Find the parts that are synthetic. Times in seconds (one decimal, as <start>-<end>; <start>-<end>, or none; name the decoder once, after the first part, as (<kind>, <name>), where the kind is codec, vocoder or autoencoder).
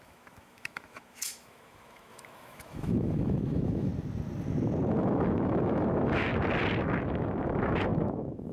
0.0-3.9 (autoencoder, DAC-VAE); 5.0-6.3; 6.8-8.5